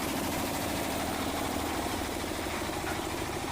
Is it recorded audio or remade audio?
remade